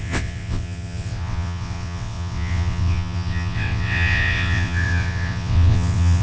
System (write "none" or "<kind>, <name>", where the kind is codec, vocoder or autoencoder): vocoder, WaveNeXt